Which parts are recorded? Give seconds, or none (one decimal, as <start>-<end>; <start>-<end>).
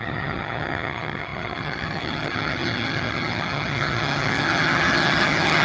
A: none